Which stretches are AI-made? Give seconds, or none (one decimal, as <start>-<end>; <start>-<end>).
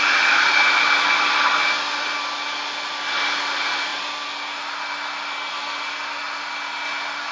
none